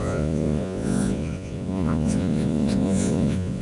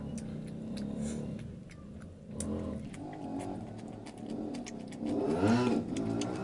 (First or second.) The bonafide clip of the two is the second